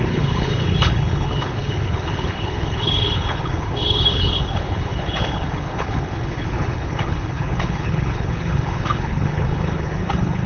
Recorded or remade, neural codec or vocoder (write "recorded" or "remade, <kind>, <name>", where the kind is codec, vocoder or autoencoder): remade, codec, HILCodec